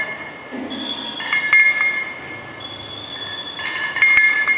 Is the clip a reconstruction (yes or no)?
no